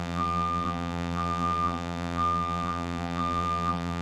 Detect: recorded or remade remade